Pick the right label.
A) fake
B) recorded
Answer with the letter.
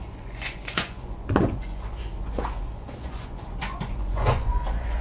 A